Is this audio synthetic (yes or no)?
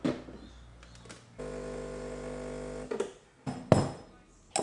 no